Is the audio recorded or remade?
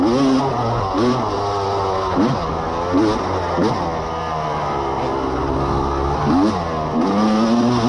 recorded